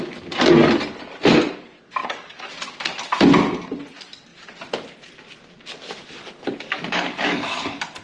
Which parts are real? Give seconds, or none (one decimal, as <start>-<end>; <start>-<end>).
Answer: 0.0-2.0; 2.5-6.0